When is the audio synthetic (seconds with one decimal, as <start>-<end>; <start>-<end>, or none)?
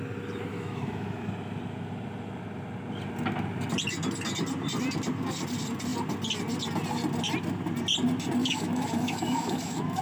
0.5-1.3; 8.4-10.0